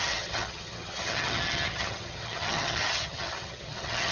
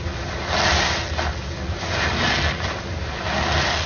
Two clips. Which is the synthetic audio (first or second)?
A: first